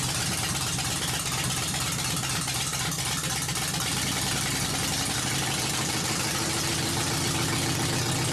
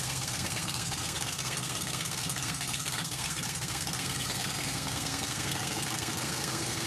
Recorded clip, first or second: first